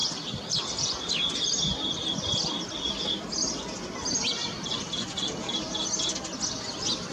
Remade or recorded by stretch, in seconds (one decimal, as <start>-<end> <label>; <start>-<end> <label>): 0.0-1.0 remade; 1.0-7.1 recorded